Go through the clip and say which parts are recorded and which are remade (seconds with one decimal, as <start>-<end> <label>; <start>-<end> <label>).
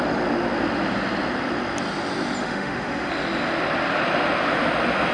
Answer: 0.0-2.4 recorded; 2.4-3.1 remade; 3.1-5.1 recorded